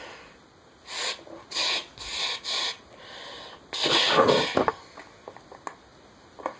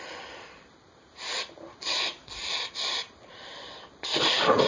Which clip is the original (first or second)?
first